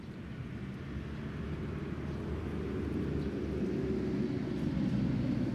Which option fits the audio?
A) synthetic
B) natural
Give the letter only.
B